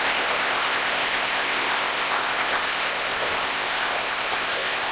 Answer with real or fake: fake